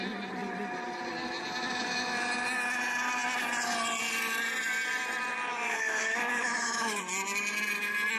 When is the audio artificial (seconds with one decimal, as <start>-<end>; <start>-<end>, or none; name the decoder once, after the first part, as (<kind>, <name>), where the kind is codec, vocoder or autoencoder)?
5.5-7.0 (autoencoder, DAC-VAE)